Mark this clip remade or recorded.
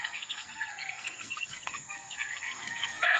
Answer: remade